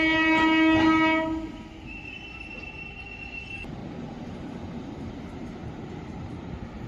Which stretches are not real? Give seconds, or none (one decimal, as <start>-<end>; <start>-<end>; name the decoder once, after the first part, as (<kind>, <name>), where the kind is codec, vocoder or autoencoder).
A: 3.8-6.5 (vocoder, BigVGAN v2)